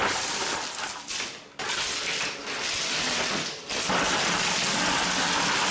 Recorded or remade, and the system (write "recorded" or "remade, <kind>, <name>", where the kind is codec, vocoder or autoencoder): recorded